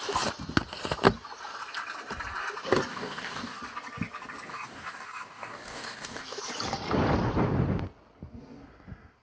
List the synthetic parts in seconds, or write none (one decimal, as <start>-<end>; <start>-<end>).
2.9-3.6; 4.5-6.4